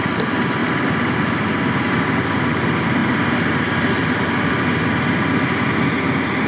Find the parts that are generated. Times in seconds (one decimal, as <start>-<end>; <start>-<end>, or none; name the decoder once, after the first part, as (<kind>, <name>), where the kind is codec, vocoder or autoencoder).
0.6-1.6 (vocoder, BigVGAN v2); 3.0-5.4